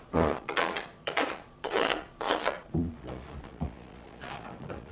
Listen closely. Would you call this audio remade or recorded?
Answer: remade